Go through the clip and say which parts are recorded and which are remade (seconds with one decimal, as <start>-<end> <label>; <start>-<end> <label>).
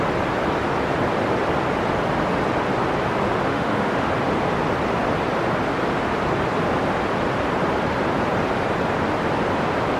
0.0-3.5 recorded; 3.5-4.1 remade; 4.1-10.0 recorded